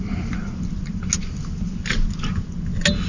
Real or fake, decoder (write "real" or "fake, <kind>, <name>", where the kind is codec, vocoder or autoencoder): real